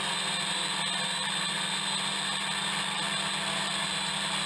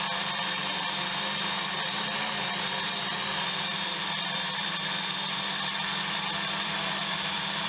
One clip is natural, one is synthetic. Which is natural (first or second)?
first